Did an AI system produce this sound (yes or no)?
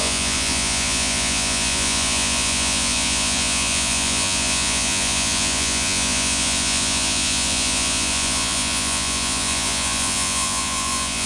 yes